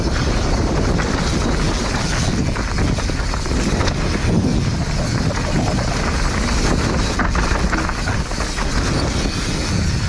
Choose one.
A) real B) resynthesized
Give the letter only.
A